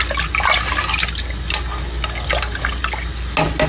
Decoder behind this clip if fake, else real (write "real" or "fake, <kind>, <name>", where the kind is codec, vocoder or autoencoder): real